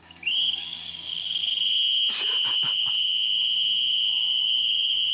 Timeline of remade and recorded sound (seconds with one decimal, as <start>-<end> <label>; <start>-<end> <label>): 0.0-1.4 remade; 1.4-4.1 recorded; 4.1-5.1 remade